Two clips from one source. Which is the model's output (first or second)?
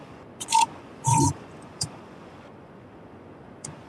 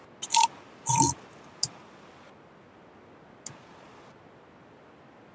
first